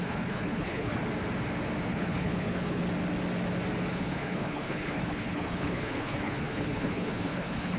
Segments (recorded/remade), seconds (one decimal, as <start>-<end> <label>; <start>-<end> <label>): 0.0-1.0 remade; 1.0-1.9 recorded; 1.9-2.8 remade; 2.8-3.9 recorded; 3.9-7.8 remade